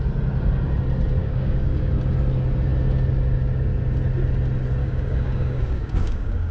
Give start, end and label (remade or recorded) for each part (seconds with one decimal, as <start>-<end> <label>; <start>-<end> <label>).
0.0-1.2 recorded; 1.2-1.9 remade; 1.9-4.8 recorded; 4.8-6.5 remade